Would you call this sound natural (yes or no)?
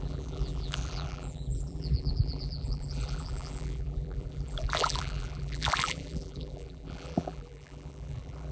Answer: no